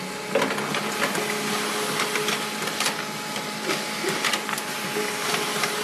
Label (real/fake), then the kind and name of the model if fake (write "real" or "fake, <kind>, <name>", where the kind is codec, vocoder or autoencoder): real